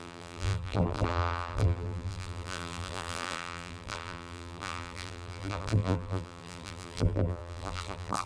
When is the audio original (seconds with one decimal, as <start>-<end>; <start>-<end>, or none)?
none